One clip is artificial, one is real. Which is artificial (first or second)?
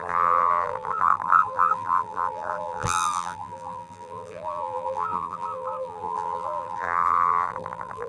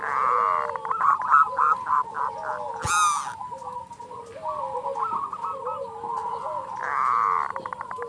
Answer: first